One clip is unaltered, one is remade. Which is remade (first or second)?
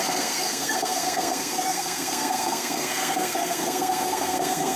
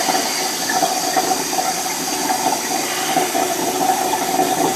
first